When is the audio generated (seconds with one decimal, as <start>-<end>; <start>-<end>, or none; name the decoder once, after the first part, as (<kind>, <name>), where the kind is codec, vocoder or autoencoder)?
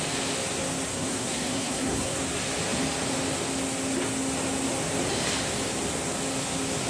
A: 0.9-2.2 (codec, SNAC)